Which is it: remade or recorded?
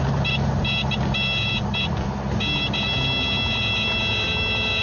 recorded